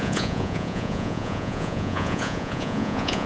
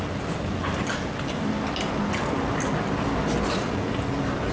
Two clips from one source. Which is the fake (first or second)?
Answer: first